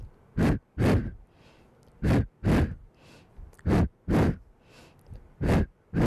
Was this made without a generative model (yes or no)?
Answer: yes